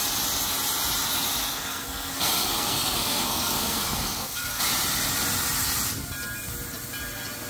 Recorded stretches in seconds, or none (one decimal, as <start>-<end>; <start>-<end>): 0.0-1.5; 4.6-7.5

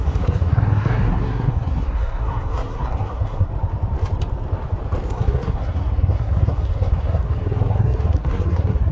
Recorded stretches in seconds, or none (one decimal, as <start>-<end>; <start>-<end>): 3.5-5.1

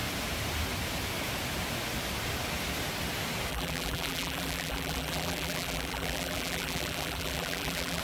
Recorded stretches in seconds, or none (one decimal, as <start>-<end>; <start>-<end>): 0.0-3.5